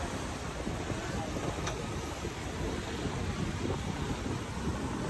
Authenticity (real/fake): real